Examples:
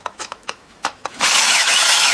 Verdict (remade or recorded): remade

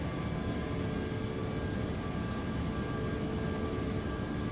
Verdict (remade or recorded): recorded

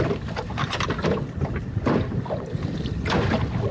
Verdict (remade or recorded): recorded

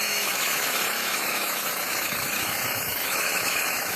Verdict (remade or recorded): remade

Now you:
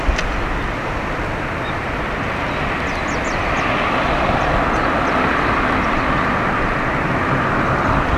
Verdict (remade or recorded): recorded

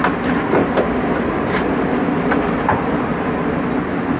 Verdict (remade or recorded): recorded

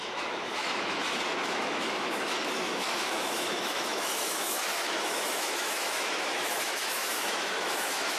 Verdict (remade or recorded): remade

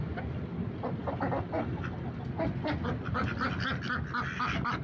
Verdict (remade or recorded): recorded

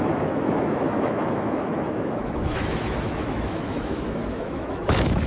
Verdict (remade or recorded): remade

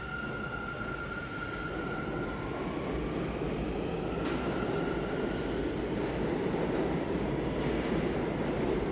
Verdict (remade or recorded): recorded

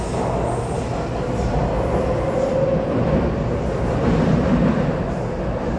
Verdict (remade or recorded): recorded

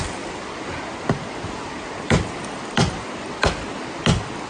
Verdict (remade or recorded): recorded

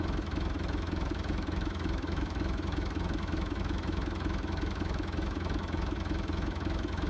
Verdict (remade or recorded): remade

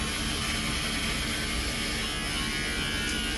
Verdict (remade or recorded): recorded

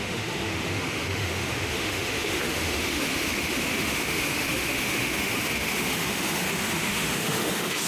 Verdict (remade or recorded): remade